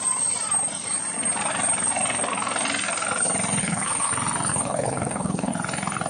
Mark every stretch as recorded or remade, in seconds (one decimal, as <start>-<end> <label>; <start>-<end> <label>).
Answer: 0.0-3.6 recorded; 3.6-4.1 remade; 4.1-4.5 recorded; 4.5-5.5 remade; 5.5-6.1 recorded

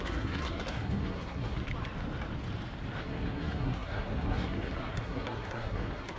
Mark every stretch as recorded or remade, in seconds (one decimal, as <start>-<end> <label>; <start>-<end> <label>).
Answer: 0.0-1.7 remade; 1.7-3.0 recorded; 3.0-6.2 remade

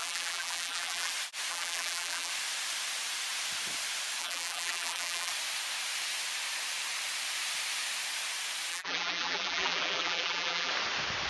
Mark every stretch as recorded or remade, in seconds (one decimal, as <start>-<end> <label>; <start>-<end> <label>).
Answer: 0.0-1.1 remade; 1.1-1.5 recorded; 1.5-2.3 remade; 2.3-4.2 recorded; 4.2-5.3 remade; 5.3-8.7 recorded; 8.7-10.7 remade; 10.7-11.3 recorded

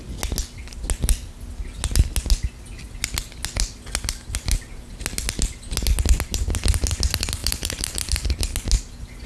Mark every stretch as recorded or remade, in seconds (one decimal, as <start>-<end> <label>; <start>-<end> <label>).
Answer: 0.0-7.4 recorded; 7.4-8.0 remade; 8.0-9.3 recorded

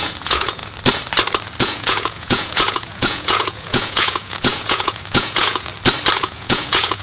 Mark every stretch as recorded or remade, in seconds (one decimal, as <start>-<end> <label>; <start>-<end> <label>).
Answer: 0.0-0.6 remade; 0.6-1.6 recorded; 1.6-5.7 remade; 5.7-6.2 recorded; 6.2-7.0 remade

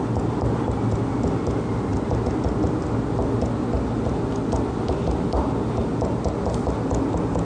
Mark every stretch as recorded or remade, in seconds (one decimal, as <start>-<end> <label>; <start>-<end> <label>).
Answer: 0.0-7.4 recorded